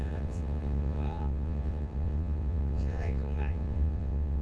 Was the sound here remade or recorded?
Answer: remade